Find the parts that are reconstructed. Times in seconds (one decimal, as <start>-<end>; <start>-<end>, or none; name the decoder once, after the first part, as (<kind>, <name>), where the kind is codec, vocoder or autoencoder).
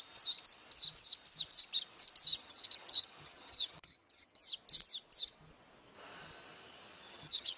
2.4-4.4 (vocoder, HiFi-GAN); 6.9-7.6